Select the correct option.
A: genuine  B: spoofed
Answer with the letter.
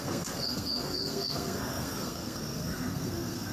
B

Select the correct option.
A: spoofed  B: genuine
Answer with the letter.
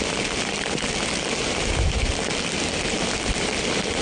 B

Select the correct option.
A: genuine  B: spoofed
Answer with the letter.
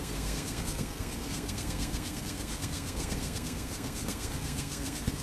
B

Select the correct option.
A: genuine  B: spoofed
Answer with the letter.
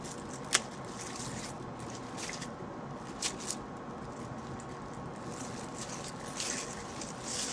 A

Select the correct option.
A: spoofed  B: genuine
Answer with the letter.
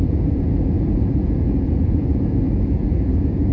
A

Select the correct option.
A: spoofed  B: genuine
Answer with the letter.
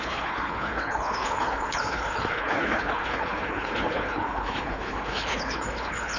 A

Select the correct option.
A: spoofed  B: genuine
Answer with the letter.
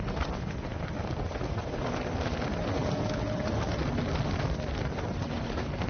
B